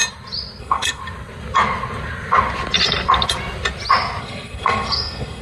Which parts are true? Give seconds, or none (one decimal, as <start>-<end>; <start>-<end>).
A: 0.0-0.6; 1.0-4.2